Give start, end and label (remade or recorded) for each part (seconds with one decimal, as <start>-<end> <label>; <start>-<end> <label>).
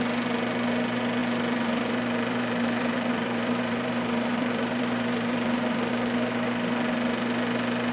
0.0-1.2 recorded; 1.2-5.9 remade; 5.9-7.9 recorded